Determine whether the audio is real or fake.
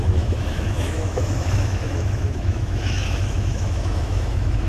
fake